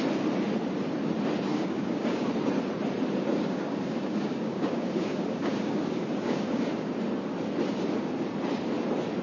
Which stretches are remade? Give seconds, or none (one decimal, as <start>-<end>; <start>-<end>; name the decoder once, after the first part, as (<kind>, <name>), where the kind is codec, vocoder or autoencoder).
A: 1.5-2.3 (codec, DAC); 3.3-6.9